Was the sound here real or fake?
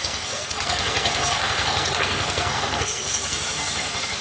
fake